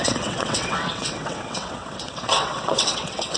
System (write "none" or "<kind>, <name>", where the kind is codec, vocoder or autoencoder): vocoder, WaveNeXt